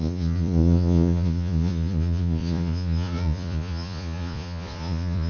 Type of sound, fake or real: fake